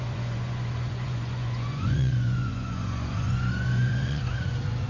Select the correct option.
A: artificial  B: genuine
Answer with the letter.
A